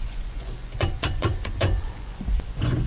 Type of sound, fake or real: fake